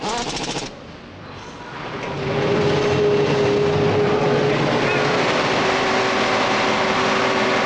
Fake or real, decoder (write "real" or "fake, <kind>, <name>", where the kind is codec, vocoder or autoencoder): real